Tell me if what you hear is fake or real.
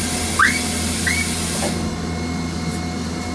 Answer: real